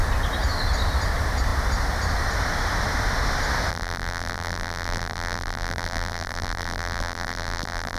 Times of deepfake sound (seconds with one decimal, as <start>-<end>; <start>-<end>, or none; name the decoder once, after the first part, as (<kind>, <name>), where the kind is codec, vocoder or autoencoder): 3.7-8.0 (vocoder, BigVGAN v2)